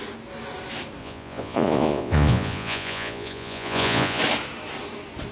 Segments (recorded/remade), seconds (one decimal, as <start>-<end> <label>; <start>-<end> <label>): 0.0-1.0 recorded; 1.0-4.2 remade; 4.2-5.3 recorded